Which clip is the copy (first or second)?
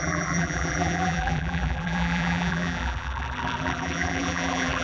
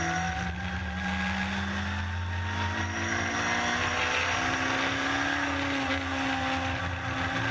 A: first